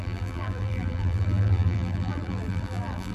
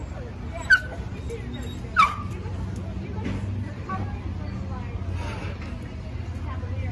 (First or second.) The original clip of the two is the second